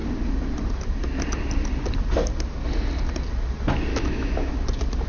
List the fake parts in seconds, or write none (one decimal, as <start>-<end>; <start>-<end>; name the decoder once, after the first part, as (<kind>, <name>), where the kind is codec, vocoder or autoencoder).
3.9-4.5 (autoencoder, DAC-VAE)